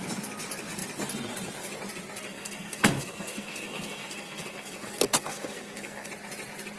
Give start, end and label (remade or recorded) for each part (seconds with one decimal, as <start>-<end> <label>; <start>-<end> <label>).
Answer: 0.0-2.3 recorded; 2.3-6.1 remade; 6.1-6.8 recorded